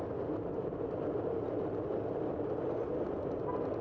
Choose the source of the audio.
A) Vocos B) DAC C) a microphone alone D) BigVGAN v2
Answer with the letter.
C